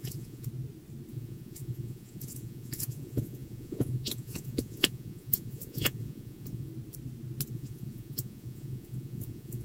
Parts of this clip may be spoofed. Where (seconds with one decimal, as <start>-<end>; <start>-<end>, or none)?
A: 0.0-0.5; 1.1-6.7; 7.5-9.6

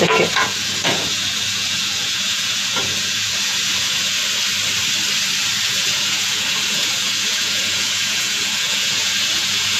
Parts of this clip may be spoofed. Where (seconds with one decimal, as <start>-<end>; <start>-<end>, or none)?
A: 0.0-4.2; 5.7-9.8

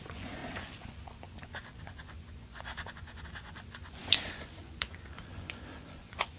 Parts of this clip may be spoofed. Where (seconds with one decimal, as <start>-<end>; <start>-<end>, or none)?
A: 0.0-6.4